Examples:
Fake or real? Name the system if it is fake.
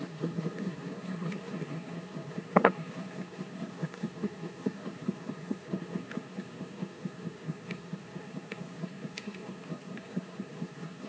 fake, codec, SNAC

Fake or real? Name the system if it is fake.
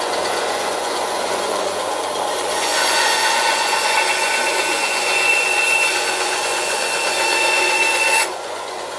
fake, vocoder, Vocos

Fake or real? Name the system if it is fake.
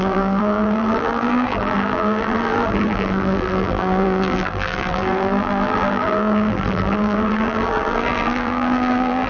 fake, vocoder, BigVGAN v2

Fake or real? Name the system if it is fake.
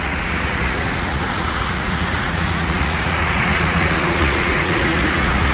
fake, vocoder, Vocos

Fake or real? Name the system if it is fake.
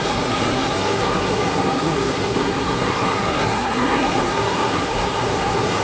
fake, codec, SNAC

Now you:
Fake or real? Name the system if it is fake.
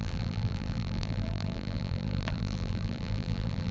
fake, vocoder, BigVGAN v2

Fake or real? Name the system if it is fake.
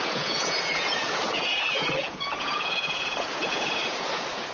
fake, vocoder, Vocos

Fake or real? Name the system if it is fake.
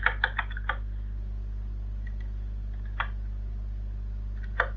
real